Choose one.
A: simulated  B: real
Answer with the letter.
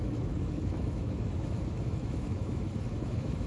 A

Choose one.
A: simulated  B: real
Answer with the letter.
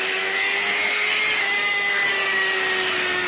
A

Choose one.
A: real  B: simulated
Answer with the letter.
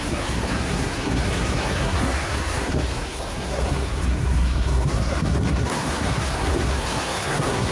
B